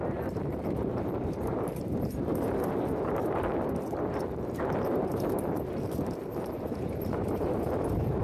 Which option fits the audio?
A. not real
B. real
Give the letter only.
A